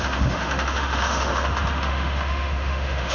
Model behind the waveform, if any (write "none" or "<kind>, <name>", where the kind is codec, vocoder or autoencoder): autoencoder, DAC-VAE